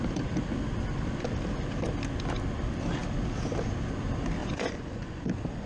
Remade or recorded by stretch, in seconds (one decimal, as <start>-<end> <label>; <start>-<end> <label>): 0.0-4.4 recorded; 4.4-5.2 remade; 5.2-5.7 recorded